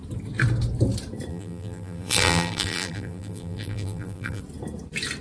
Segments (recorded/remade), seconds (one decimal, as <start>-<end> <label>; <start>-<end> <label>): 0.0-1.3 recorded; 1.3-4.4 remade; 4.4-5.2 recorded